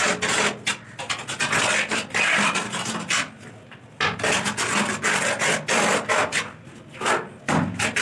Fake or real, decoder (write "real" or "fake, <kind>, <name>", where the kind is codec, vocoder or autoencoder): real